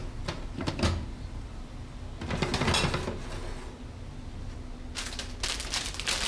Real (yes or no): yes